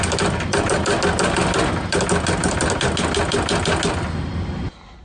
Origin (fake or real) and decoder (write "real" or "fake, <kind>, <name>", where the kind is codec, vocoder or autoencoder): real